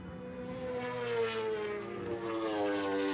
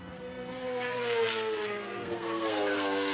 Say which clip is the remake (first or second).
second